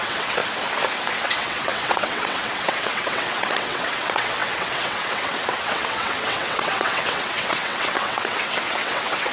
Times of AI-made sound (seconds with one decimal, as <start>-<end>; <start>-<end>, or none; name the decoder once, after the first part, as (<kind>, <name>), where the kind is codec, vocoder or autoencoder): 0.0-0.4 (vocoder, WaveNeXt); 1.1-9.3